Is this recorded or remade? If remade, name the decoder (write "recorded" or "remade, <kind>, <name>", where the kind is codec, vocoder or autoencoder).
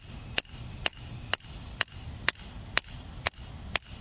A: recorded